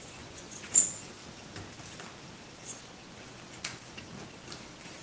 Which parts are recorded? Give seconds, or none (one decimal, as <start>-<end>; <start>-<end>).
1.2-2.6; 4.1-5.0